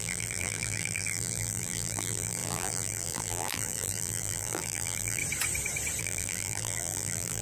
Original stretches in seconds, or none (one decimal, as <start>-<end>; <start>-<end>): 5.2-6.0